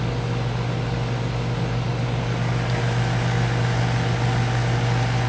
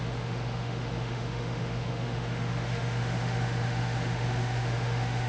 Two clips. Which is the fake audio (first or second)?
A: second